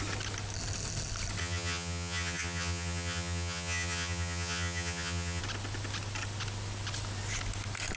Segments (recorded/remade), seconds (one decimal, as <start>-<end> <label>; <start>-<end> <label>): 0.0-1.4 recorded; 1.4-5.4 remade; 5.4-8.0 recorded